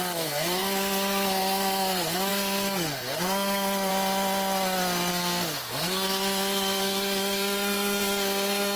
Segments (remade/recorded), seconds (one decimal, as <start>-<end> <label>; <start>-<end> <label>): 0.0-3.9 remade; 3.9-5.1 recorded; 5.1-8.8 remade

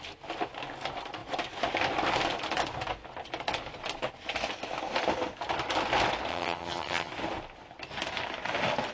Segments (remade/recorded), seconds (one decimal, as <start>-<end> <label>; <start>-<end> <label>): 0.0-6.3 recorded; 6.3-7.1 remade; 7.1-8.9 recorded

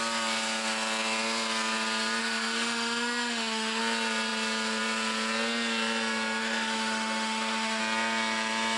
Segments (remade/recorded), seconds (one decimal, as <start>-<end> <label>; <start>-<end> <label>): 0.0-2.2 recorded; 2.2-3.8 remade; 3.8-6.4 recorded; 6.4-7.8 remade; 7.8-8.8 recorded